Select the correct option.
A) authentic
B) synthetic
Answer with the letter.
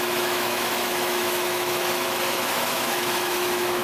B